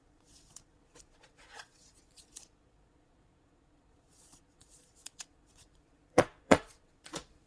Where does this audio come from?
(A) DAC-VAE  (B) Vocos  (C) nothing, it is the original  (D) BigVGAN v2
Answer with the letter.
B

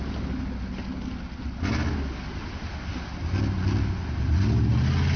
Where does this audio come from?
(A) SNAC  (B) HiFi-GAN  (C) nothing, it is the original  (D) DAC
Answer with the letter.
C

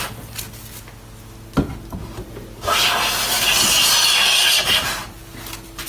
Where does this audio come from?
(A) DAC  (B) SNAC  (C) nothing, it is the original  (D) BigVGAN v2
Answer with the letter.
C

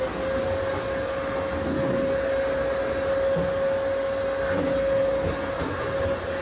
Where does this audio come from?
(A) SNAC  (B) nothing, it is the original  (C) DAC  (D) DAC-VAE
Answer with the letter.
B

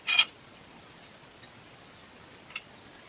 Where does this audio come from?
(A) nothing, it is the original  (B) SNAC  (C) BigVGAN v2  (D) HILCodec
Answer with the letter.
A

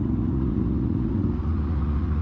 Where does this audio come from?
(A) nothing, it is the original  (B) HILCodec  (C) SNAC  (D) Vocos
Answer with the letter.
D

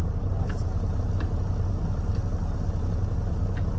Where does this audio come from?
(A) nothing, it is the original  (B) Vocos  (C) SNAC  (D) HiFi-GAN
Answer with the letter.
A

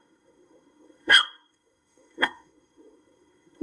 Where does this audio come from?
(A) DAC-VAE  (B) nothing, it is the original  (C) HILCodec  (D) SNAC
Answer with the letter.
D